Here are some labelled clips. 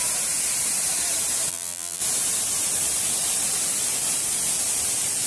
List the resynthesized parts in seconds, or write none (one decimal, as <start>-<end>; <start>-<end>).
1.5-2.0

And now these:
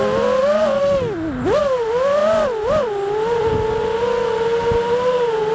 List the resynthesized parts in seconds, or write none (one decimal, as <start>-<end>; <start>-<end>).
none

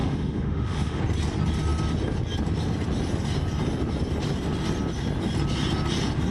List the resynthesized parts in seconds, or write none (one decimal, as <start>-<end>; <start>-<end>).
0.0-1.0

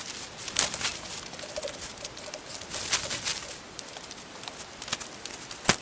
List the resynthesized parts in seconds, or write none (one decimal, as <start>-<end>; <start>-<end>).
0.9-2.5; 3.3-4.3